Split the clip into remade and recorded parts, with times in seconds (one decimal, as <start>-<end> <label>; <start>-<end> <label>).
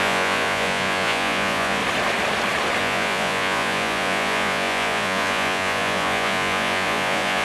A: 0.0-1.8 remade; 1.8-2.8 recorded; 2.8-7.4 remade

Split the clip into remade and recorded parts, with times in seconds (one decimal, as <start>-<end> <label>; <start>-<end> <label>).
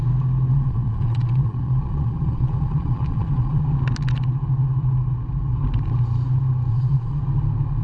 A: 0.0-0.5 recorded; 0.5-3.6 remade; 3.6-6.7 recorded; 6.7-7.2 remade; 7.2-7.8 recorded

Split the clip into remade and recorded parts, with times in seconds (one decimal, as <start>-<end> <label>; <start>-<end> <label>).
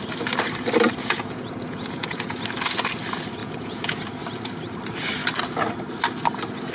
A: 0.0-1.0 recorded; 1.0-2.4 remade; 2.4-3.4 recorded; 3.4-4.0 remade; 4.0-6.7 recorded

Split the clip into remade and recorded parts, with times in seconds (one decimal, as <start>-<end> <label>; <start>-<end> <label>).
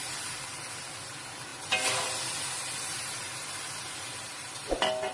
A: 0.0-5.1 recorded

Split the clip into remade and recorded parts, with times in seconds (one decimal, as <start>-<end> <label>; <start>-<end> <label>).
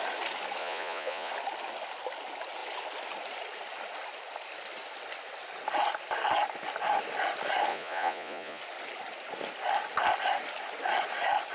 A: 0.0-0.6 recorded; 0.6-1.3 remade; 1.3-7.7 recorded; 7.7-8.6 remade; 8.6-11.5 recorded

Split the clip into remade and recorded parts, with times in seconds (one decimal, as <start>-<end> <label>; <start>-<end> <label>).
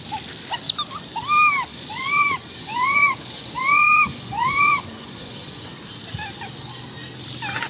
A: 0.0-1.7 recorded; 1.7-5.7 remade; 5.7-7.7 recorded